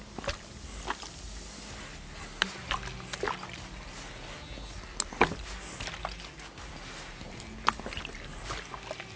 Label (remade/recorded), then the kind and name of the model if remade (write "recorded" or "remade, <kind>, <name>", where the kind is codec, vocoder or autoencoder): recorded